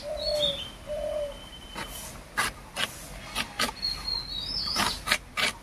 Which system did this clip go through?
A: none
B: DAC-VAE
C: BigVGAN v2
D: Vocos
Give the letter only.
A